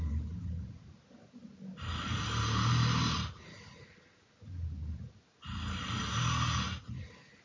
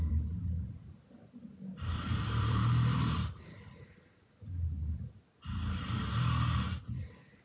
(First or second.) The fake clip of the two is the second